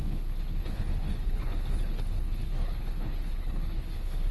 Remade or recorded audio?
remade